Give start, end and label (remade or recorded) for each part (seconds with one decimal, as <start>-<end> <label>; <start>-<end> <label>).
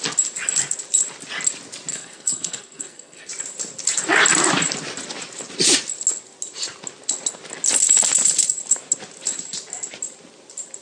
0.0-1.9 recorded; 1.9-3.3 remade; 3.3-10.8 recorded